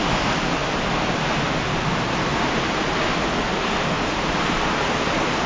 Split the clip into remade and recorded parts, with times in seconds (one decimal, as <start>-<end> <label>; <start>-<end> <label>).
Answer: 0.0-5.5 recorded